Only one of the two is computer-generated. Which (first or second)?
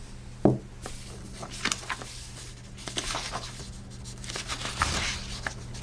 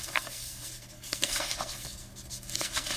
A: second